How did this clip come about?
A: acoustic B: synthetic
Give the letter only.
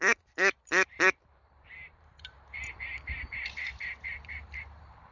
B